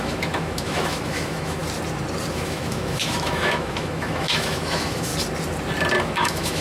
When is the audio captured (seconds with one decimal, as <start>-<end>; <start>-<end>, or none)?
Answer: 1.6-2.3; 5.1-6.0